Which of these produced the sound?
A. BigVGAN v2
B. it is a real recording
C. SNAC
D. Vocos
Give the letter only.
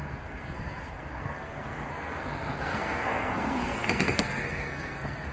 C